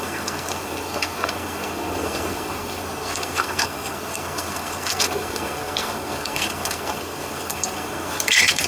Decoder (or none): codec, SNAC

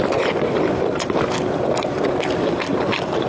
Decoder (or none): vocoder, BigVGAN v2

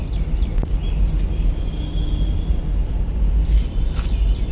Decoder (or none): none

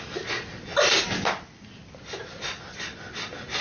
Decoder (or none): none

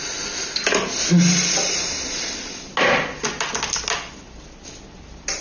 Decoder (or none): none